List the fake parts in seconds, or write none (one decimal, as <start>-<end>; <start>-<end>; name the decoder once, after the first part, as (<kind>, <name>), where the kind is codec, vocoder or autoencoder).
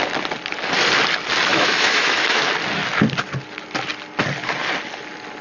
1.5-2.4 (autoencoder, DAC-VAE)